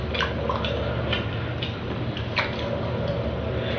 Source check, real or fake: real